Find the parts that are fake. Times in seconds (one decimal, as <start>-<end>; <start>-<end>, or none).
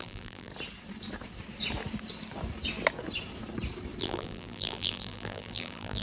0.0-0.5; 4.0-6.0